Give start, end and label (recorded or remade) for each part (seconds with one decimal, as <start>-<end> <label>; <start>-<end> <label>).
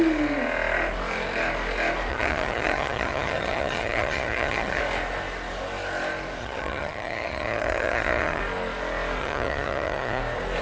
0.0-2.1 recorded; 2.1-4.8 remade; 4.8-6.4 recorded; 6.4-8.4 remade; 8.4-9.2 recorded; 9.2-10.2 remade; 10.2-10.6 recorded